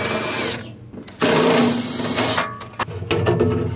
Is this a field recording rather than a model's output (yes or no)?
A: yes